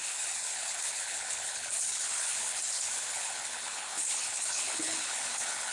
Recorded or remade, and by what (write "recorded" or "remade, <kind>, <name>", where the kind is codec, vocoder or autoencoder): remade, codec, HILCodec